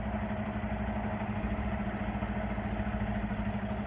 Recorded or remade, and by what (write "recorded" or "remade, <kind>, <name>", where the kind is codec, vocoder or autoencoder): recorded